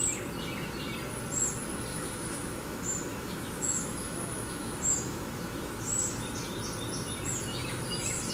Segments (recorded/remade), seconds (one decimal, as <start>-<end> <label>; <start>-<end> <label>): 0.0-1.9 recorded; 1.9-5.7 remade; 5.7-7.5 recorded; 7.5-8.3 remade

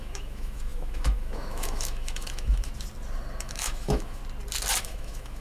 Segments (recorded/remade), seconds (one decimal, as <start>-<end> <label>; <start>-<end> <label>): 0.0-2.7 remade; 2.7-3.4 recorded; 3.4-4.2 remade; 4.2-4.8 recorded; 4.8-5.4 remade

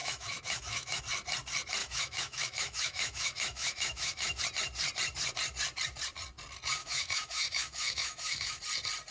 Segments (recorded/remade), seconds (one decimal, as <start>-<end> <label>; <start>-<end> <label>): 0.0-1.0 remade; 1.0-1.8 recorded; 1.8-4.4 remade; 4.4-6.8 recorded; 6.8-8.6 remade; 8.6-9.1 recorded

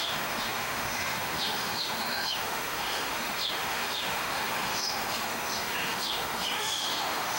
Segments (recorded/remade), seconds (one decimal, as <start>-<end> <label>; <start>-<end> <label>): 0.0-7.4 remade

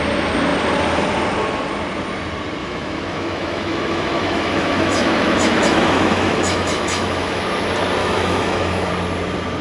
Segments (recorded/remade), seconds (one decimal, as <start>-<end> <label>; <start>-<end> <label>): 0.0-2.6 recorded; 2.6-7.4 remade; 7.4-8.0 recorded; 8.0-8.9 remade; 8.9-9.6 recorded

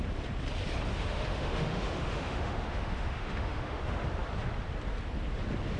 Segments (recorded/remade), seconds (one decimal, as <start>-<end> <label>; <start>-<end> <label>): 0.0-0.9 recorded; 0.9-3.8 remade; 3.8-5.8 recorded